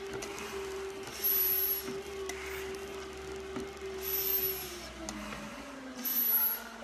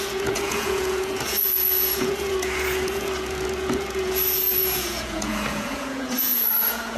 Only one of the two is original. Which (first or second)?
first